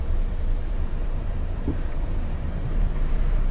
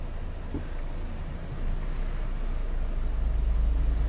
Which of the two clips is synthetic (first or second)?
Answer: first